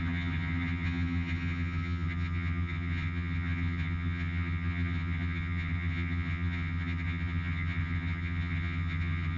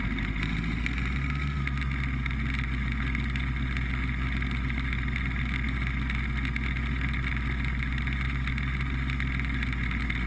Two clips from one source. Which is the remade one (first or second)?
first